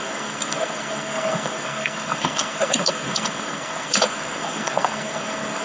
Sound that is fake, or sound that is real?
fake